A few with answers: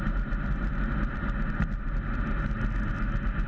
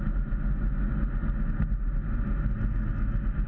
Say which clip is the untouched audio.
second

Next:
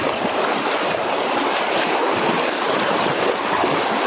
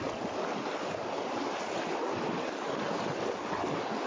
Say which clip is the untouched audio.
second